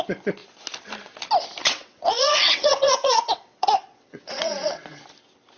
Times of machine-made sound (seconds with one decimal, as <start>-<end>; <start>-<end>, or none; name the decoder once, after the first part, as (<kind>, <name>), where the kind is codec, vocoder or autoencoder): 1.6-5.0 (vocoder, WaveNeXt)